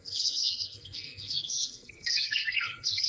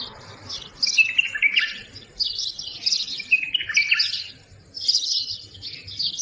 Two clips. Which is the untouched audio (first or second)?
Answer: second